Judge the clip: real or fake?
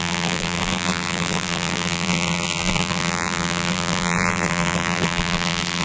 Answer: fake